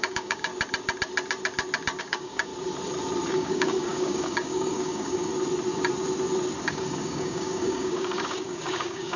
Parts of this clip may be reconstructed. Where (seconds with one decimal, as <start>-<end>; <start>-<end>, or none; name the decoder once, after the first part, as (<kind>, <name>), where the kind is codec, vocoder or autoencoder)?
0.0-0.5 (codec, DAC); 2.0-2.5; 3.3-5.3; 6.7-9.2

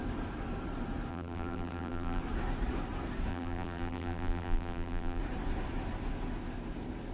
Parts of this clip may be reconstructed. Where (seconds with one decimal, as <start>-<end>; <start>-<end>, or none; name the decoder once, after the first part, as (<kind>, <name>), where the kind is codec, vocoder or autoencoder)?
1.1-2.2 (vocoder, BigVGAN v2); 3.3-5.2

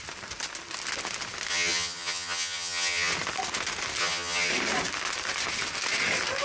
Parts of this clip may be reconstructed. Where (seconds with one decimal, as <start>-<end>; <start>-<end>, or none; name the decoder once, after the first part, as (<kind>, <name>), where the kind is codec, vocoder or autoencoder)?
1.5-3.1 (vocoder, HiFi-GAN); 4.0-4.5

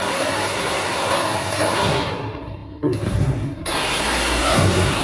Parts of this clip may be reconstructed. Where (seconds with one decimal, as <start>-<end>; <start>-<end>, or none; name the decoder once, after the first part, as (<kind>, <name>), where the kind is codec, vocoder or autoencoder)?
0.0-5.0 (codec, SNAC)

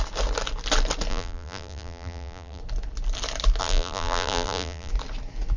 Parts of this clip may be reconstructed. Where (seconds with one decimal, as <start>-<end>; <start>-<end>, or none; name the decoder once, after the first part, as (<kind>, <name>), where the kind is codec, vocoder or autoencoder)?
1.1-2.6 (vocoder, BigVGAN v2); 3.6-4.9